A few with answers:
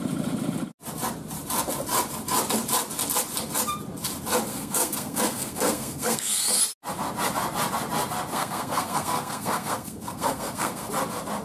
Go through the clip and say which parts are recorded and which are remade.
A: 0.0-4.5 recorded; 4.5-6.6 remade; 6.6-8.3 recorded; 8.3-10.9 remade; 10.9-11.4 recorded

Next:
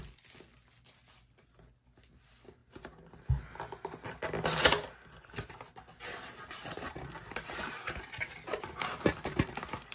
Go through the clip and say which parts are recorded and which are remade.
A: 0.0-9.9 recorded

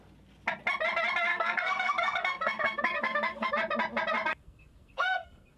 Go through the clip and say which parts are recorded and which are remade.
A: 0.0-1.3 recorded; 1.3-3.5 remade; 3.5-4.3 recorded; 4.3-5.6 remade

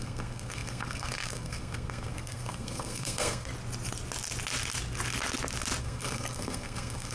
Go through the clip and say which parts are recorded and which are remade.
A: 0.0-3.5 remade; 3.5-5.8 recorded; 5.8-7.1 remade

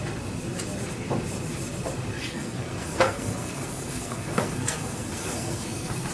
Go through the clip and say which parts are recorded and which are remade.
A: 0.0-2.2 recorded; 2.2-6.1 remade